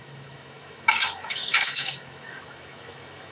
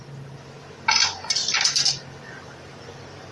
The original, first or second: second